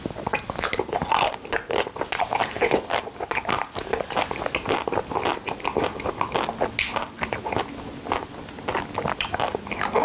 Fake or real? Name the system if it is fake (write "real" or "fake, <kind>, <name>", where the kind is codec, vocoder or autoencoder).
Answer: real